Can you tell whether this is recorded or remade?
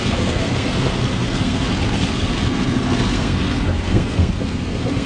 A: remade